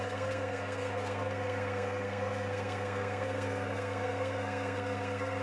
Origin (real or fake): fake